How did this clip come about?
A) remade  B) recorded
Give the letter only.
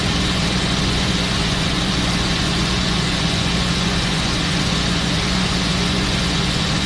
A